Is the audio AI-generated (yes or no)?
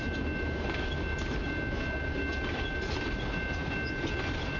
no